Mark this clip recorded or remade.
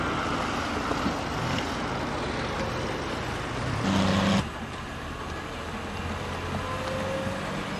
recorded